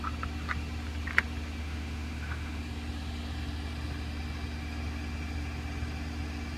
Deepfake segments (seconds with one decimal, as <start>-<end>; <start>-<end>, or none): 1.6-2.6